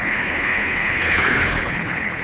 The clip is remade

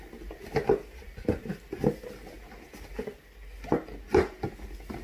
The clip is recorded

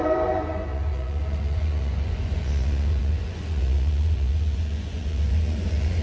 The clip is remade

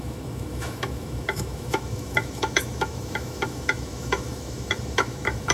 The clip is remade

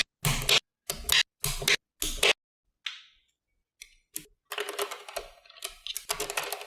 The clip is recorded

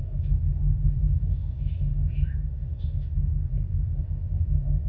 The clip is remade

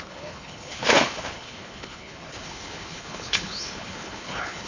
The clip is remade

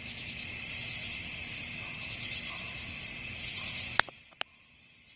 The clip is recorded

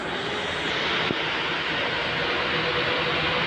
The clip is recorded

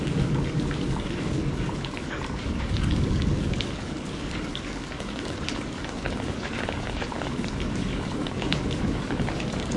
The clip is remade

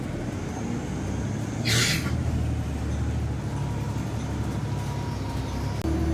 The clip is recorded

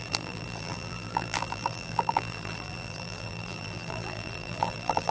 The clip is remade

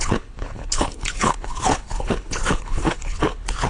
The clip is remade